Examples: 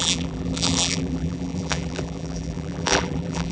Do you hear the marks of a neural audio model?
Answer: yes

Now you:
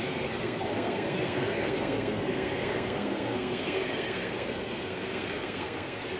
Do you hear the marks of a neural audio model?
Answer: yes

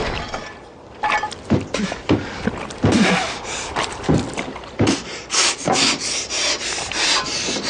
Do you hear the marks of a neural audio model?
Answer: no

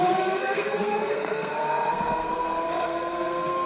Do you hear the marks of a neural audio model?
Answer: yes